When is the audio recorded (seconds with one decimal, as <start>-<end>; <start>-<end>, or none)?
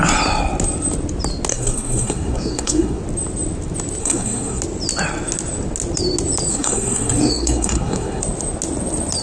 0.0-1.5; 3.0-4.0; 4.6-6.5; 8.2-9.2